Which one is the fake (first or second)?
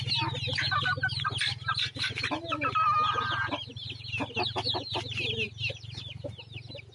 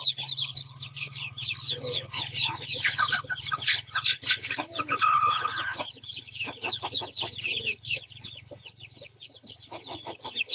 second